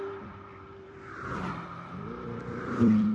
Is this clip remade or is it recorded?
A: remade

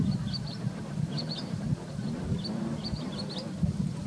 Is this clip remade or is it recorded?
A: remade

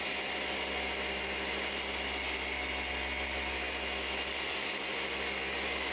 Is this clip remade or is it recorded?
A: recorded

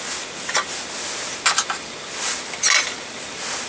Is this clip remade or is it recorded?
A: recorded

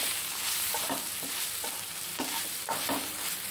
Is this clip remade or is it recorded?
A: remade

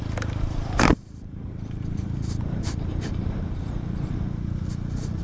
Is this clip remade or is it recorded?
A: remade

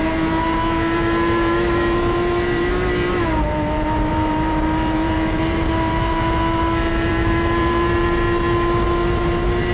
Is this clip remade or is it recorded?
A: remade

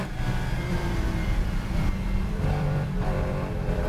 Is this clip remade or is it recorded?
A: remade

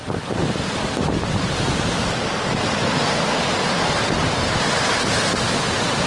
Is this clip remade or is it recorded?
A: recorded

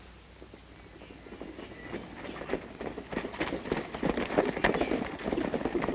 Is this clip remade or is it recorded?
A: recorded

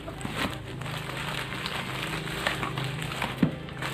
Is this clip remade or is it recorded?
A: recorded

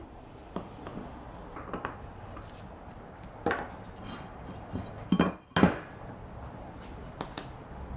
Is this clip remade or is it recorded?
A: recorded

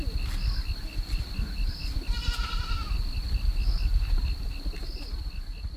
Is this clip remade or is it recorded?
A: remade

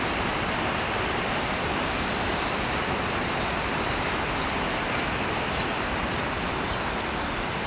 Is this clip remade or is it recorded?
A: remade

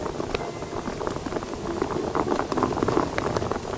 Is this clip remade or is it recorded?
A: recorded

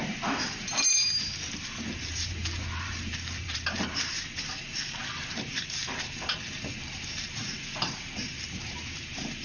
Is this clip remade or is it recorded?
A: remade